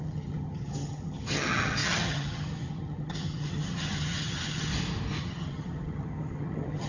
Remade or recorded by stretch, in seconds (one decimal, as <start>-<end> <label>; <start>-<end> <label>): 0.0-4.7 remade; 4.7-5.2 recorded; 5.2-6.9 remade